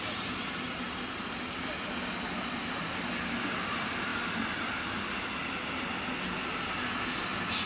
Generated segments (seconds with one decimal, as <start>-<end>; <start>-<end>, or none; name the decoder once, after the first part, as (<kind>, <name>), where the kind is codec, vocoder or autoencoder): none